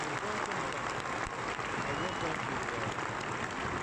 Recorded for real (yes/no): yes